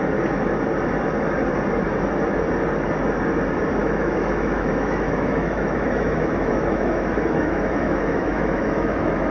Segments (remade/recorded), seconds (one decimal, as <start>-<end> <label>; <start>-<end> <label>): 0.0-3.8 recorded; 3.8-9.3 remade